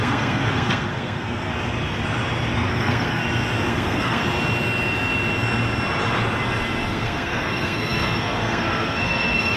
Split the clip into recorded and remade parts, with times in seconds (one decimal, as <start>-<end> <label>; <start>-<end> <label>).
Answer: 0.0-1.5 remade; 1.5-2.7 recorded; 2.7-3.2 remade; 3.2-3.7 recorded; 3.7-4.2 remade; 4.2-6.9 recorded; 6.9-9.6 remade